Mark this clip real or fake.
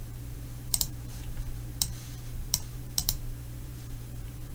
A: fake